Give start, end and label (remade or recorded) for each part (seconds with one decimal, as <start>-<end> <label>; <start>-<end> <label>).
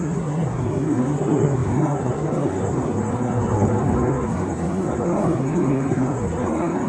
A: 0.0-6.9 remade